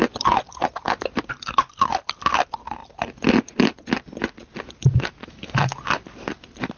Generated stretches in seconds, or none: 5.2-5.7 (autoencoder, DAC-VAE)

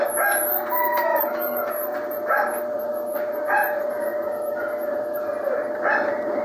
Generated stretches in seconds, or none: 1.1-1.7 (autoencoder, DAC-VAE)

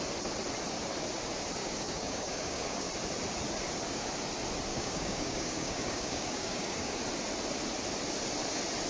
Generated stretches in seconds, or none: 1.6-2.9 (codec, DAC); 4.7-7.0

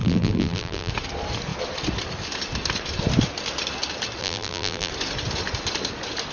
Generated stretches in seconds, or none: 0.0-0.9 (vocoder, BigVGAN v2); 4.2-4.9